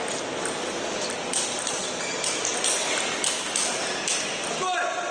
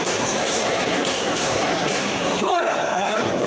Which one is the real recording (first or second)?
first